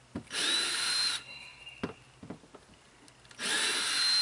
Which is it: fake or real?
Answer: real